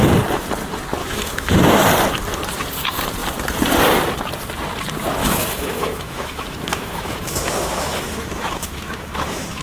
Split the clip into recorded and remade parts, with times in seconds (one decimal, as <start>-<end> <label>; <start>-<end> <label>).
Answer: 0.0-1.0 recorded; 1.0-1.5 remade; 1.5-5.2 recorded; 5.2-9.6 remade

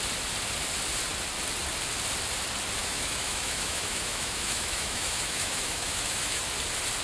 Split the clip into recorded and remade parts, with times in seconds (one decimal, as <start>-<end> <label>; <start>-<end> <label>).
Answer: 0.0-2.8 recorded; 2.8-6.4 remade; 6.4-7.0 recorded

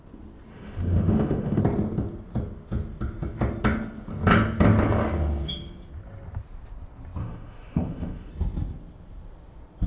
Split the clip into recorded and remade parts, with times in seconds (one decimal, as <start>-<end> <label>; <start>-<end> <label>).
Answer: 0.0-0.5 recorded; 0.5-1.6 remade; 1.6-7.2 recorded; 7.2-8.3 remade; 8.3-9.9 recorded

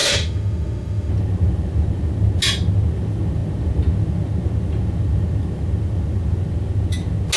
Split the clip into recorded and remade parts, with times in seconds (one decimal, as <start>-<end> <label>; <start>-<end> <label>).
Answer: 0.0-1.1 remade; 1.1-7.4 recorded

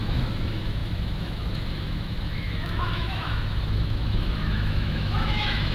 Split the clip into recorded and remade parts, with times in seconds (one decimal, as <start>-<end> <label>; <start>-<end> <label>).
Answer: 0.0-5.7 remade